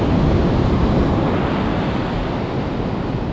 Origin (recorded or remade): recorded